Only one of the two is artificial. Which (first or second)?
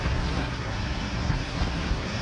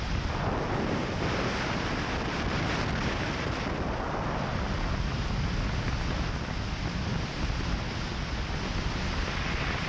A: first